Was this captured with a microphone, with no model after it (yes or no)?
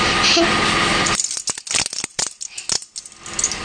yes